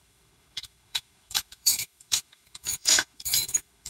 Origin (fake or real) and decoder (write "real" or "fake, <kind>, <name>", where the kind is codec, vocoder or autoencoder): fake, autoencoder, DAC-VAE